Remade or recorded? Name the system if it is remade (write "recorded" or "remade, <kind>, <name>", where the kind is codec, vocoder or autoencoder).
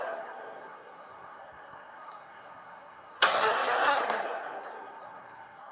remade, codec, SNAC